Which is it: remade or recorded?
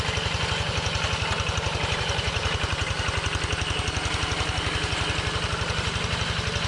recorded